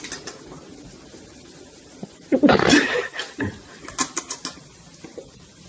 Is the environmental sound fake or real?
real